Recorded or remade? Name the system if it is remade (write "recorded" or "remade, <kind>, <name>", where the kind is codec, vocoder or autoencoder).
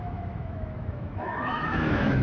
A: remade, autoencoder, DAC-VAE